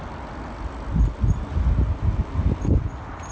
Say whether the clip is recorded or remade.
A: recorded